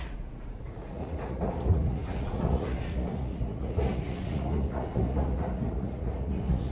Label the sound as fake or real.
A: fake